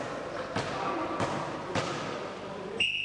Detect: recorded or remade recorded